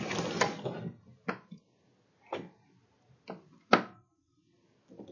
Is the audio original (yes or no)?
yes